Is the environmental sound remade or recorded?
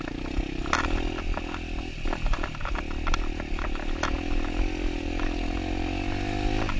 recorded